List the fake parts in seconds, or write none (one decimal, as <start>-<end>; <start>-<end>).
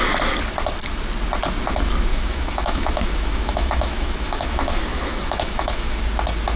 2.1-6.0